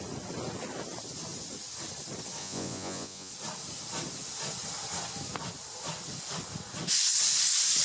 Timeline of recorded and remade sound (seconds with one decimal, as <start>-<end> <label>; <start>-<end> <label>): 0.0-2.4 recorded; 2.4-3.3 remade; 3.3-7.8 recorded